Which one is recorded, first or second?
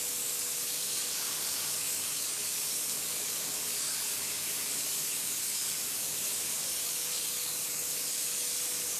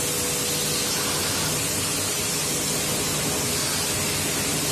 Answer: second